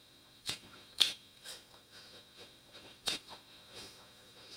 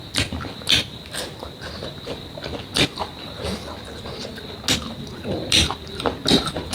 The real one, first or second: second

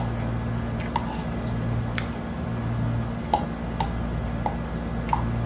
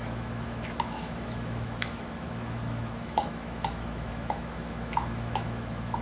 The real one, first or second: first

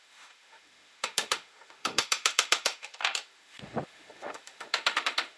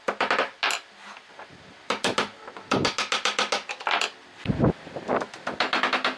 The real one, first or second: second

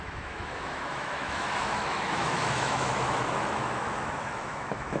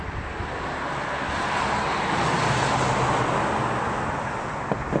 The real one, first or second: second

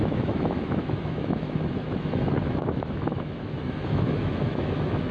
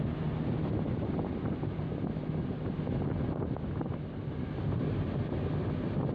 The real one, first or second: second